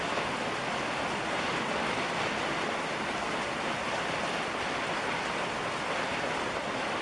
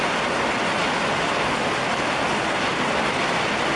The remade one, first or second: first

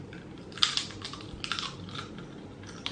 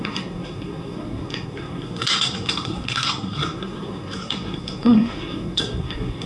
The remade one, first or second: second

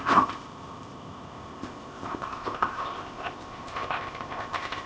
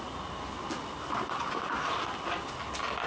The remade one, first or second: first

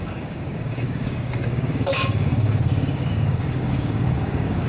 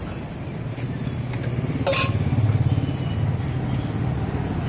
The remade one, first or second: first